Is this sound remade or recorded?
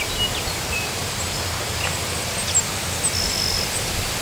recorded